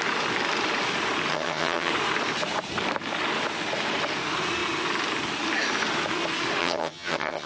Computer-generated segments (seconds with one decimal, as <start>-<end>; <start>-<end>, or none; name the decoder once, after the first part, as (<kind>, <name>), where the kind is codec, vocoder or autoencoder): 1.3-1.9 (vocoder, HiFi-GAN); 6.6-7.5